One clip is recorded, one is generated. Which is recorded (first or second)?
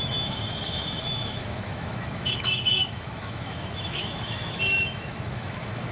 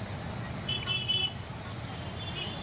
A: second